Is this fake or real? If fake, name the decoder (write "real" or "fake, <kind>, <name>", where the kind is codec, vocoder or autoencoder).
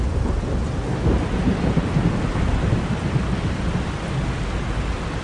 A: real